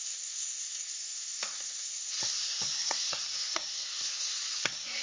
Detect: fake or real fake